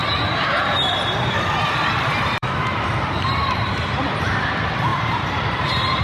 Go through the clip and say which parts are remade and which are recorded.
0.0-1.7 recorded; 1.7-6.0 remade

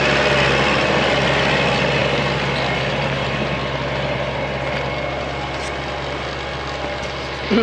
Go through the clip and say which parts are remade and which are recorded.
0.0-7.6 recorded

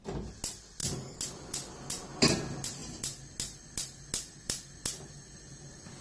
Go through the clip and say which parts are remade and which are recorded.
0.0-6.0 recorded

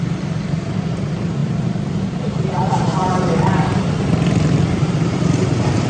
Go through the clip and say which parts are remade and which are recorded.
0.0-2.9 remade; 2.9-4.7 recorded; 4.7-5.9 remade

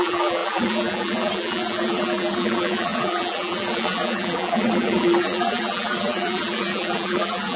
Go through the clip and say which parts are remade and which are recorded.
0.0-7.6 remade

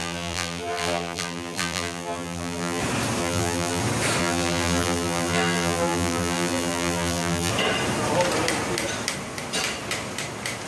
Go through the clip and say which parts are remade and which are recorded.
0.0-2.8 remade; 2.8-3.2 recorded; 3.2-3.8 remade; 3.8-4.2 recorded; 4.2-7.5 remade; 7.5-10.7 recorded